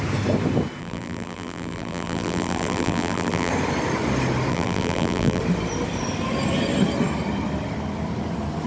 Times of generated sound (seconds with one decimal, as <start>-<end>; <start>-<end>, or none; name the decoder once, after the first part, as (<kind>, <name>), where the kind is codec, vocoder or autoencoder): 0.8-3.5 (vocoder, BigVGAN v2); 4.5-5.4